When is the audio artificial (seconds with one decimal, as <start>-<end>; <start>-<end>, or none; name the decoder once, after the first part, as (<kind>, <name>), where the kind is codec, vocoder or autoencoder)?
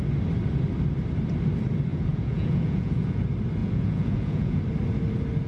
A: 1.9-3.2 (vocoder, Vocos); 3.6-4.6